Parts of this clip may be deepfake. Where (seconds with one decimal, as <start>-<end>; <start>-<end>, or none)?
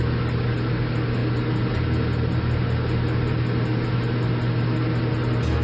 none